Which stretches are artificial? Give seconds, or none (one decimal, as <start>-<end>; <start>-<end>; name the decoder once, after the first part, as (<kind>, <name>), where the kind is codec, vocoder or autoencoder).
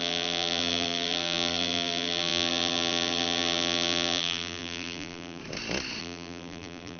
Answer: 0.0-5.4 (vocoder, BigVGAN v2); 6.0-7.0